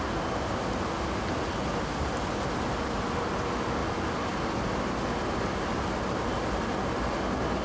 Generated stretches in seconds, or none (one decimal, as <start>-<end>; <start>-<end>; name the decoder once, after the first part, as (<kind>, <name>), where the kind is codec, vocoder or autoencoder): none